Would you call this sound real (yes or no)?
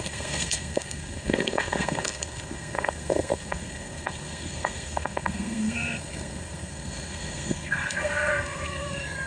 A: no